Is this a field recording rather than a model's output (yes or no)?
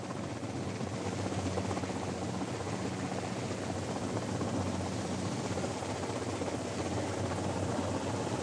yes